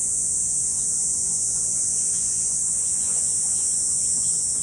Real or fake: fake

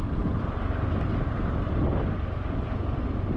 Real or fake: real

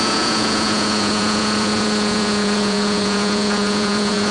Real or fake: fake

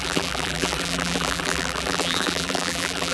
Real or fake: fake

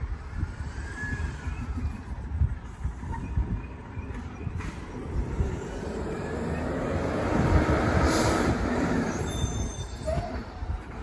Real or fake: fake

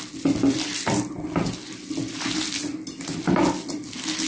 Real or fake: real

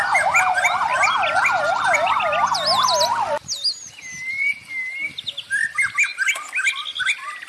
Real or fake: real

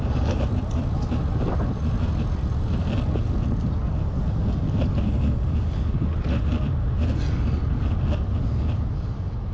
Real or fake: real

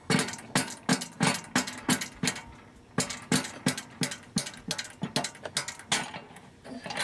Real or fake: real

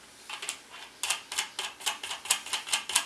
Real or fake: real